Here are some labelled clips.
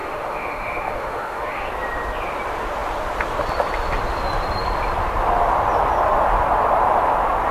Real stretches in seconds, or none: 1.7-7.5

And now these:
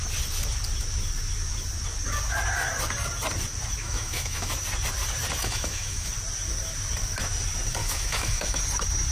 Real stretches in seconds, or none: 0.0-3.8; 4.5-5.4; 6.1-7.8; 8.6-9.1

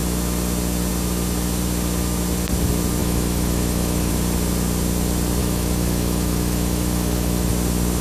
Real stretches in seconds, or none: 0.0-3.0; 4.1-5.4; 7.5-8.0

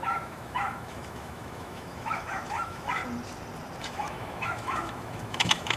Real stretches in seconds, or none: 3.0-3.8